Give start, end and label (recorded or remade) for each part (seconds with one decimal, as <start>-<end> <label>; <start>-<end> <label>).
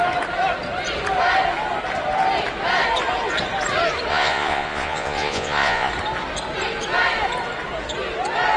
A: 0.0-4.1 recorded; 4.1-5.9 remade; 5.9-8.6 recorded